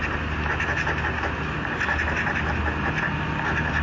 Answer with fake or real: real